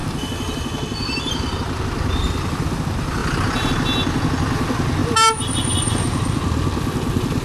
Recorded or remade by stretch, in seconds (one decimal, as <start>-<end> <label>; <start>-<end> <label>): 0.0-3.2 recorded; 3.2-3.7 remade; 3.7-7.4 recorded